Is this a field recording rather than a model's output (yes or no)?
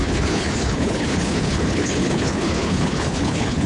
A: no